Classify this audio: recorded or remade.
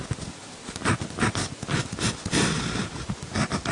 recorded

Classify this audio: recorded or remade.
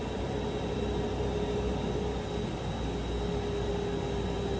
recorded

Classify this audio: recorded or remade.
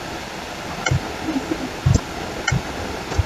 recorded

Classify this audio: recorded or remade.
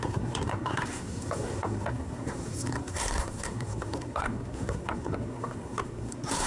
remade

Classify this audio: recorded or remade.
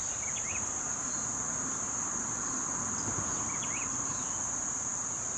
recorded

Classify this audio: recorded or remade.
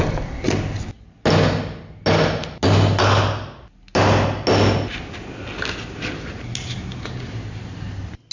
recorded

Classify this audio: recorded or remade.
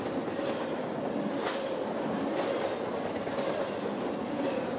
recorded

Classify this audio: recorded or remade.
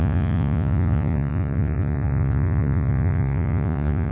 remade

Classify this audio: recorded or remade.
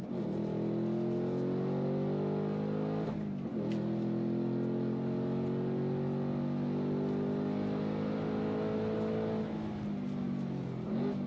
recorded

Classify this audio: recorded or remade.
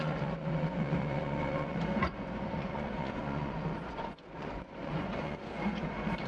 remade